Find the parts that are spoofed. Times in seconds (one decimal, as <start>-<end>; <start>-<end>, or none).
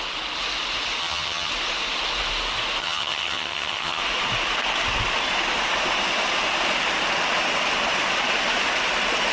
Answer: 1.0-1.5; 2.8-4.0